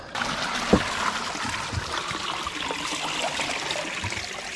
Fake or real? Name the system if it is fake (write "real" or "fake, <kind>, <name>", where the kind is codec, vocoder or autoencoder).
real